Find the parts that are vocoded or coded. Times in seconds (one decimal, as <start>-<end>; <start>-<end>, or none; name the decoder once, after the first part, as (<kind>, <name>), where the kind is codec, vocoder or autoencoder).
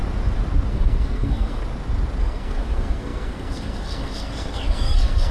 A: 0.7-1.6 (codec, SNAC); 2.2-5.3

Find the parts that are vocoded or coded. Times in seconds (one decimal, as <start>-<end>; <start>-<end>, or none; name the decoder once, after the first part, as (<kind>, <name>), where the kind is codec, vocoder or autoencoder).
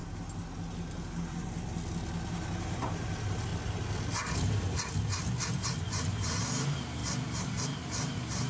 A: 2.3-3.5 (vocoder, BigVGAN v2); 5.6-7.0; 7.6-8.5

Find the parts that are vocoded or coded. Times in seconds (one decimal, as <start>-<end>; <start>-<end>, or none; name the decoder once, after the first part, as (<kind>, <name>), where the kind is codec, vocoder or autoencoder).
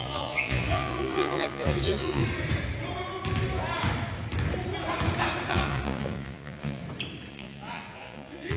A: 0.0-2.2 (vocoder, Vocos); 5.5-6.8; 7.3-8.6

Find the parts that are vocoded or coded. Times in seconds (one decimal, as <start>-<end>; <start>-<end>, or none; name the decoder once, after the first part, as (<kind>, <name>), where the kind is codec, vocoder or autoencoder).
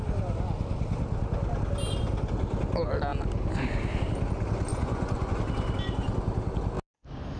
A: 4.7-5.4 (vocoder, Vocos)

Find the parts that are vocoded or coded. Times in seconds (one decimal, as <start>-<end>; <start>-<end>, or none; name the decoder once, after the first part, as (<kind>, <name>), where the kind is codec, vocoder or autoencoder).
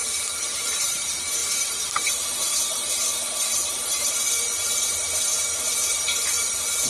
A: 0.0-1.0 (vocoder, BigVGAN v2); 1.4-2.9; 3.5-4.1